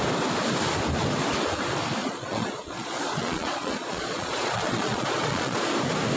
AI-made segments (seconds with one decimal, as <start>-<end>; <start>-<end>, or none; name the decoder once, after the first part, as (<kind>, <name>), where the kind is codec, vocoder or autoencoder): 2.0-5.7 (vocoder, Vocos)